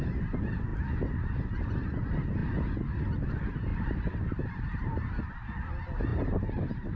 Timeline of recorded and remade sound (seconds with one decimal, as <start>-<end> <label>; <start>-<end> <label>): 0.0-3.7 recorded; 3.7-5.2 remade; 5.2-6.1 recorded; 6.1-7.0 remade